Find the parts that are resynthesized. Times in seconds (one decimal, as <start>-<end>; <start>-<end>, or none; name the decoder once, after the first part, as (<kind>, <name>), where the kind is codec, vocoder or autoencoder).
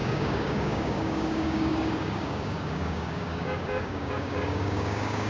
0.0-5.3 (codec, DAC)